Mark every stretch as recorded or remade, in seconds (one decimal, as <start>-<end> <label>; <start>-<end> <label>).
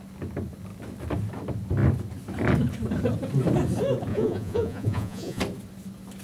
0.0-4.1 recorded; 4.1-5.4 remade; 5.4-6.2 recorded